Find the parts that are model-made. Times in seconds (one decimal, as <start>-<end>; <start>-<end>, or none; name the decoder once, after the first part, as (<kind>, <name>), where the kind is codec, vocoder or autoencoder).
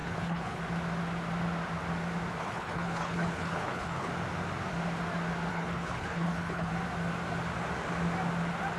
0.0-0.6 (codec, HILCodec); 2.4-4.1; 5.5-6.7